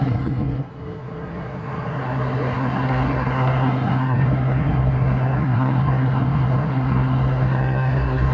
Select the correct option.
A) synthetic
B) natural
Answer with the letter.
A